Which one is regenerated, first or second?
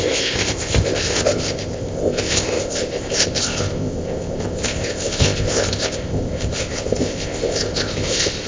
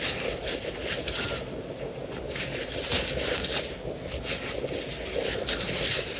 first